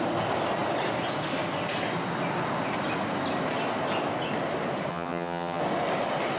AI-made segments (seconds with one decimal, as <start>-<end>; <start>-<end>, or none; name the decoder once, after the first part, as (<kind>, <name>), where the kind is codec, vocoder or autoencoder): 4.9-5.6 (vocoder, HiFi-GAN)